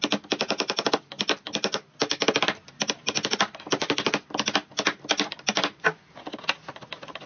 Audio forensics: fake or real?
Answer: real